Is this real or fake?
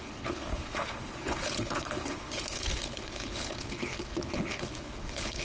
fake